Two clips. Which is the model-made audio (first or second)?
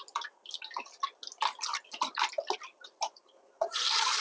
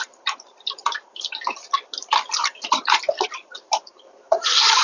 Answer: second